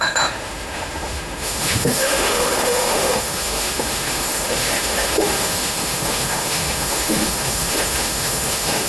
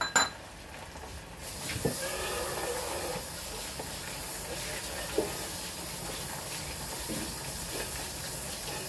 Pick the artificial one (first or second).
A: first